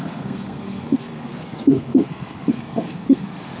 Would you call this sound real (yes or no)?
no